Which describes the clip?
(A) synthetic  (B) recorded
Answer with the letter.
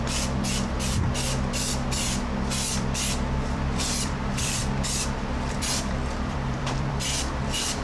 A